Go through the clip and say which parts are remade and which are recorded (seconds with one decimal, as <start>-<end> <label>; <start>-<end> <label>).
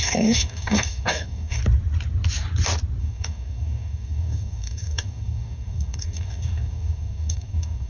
0.0-1.6 remade; 1.6-3.0 recorded; 3.0-7.9 remade